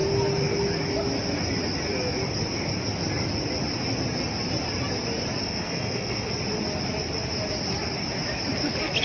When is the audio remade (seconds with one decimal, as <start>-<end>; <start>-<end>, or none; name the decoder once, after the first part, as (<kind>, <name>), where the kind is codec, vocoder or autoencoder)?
5.4-6.3 (codec, SNAC)